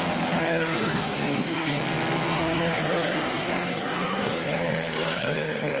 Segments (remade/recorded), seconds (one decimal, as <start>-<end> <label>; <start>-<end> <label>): 0.0-0.4 recorded; 0.4-1.8 remade; 1.8-2.3 recorded; 2.3-5.8 remade